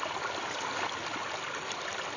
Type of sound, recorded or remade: recorded